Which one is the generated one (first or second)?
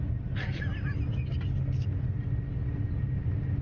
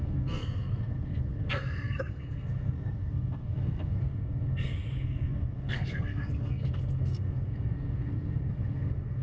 second